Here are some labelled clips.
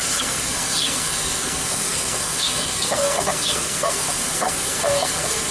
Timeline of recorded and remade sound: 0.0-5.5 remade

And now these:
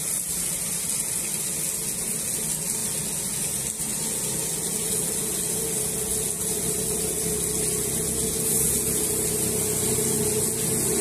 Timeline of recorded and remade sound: 0.0-11.0 recorded

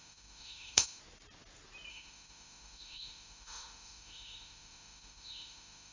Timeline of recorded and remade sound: 0.0-1.0 remade; 1.0-1.9 recorded; 1.9-5.9 remade